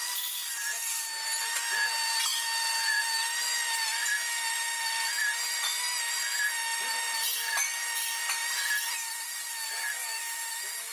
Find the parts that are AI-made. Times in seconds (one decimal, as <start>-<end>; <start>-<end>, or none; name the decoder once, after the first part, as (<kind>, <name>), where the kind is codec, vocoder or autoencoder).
8.4-9.7 (vocoder, BigVGAN v2)